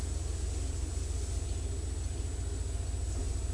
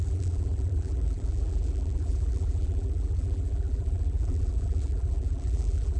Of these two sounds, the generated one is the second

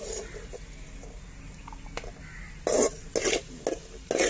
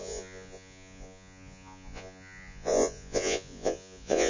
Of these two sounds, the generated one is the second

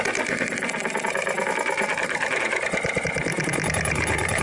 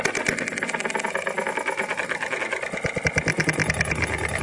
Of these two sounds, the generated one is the first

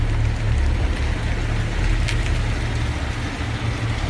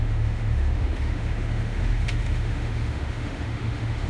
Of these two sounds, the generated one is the second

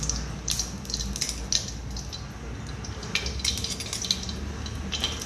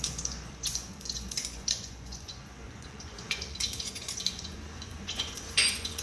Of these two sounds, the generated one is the second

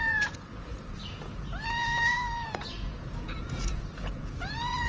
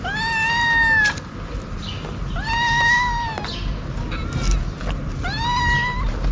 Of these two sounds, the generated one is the first